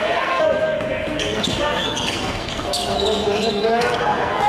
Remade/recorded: remade